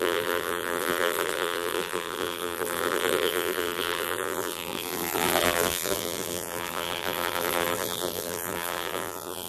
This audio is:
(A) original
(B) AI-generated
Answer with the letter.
B